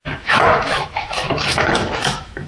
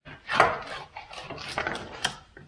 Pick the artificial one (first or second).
first